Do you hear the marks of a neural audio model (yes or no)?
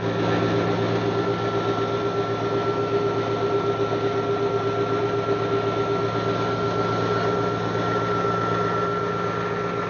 no